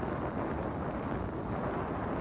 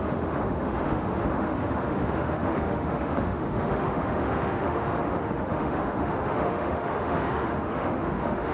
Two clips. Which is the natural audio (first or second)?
first